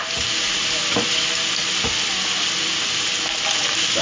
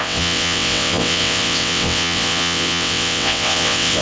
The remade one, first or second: second